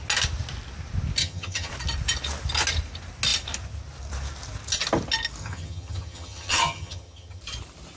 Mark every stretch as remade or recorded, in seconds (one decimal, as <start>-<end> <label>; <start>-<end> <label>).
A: 0.0-1.2 recorded; 1.2-1.7 remade; 1.7-5.4 recorded; 5.4-7.4 remade; 7.4-8.0 recorded